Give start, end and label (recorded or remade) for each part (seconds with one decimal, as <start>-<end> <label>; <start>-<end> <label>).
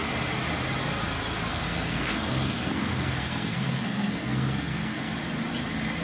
0.0-1.5 recorded; 1.5-5.1 remade; 5.1-6.0 recorded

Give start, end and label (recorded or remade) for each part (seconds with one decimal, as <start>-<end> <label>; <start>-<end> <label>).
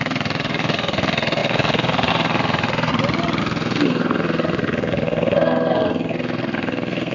0.0-2.9 remade; 2.9-3.4 recorded; 3.4-7.1 remade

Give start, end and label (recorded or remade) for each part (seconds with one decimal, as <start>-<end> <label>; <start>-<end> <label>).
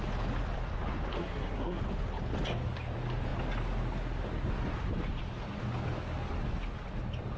0.0-1.2 recorded; 1.2-1.8 remade; 1.8-7.4 recorded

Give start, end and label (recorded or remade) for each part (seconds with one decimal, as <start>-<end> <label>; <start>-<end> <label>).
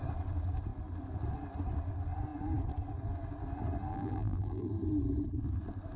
0.0-3.9 recorded; 3.9-4.7 remade; 4.7-6.0 recorded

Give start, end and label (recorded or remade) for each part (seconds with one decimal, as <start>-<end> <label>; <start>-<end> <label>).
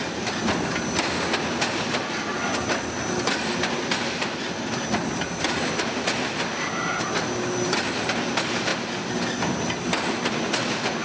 0.0-11.0 recorded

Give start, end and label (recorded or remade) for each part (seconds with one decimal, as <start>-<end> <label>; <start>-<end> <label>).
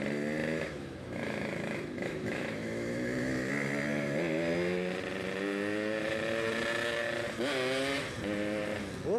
0.0-0.4 recorded; 0.4-3.5 remade; 3.5-9.2 recorded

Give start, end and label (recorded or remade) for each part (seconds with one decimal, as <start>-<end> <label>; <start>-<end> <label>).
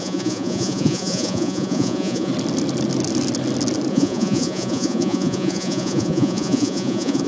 0.0-2.3 remade; 2.3-3.9 recorded; 3.9-7.3 remade